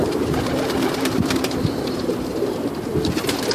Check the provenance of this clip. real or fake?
fake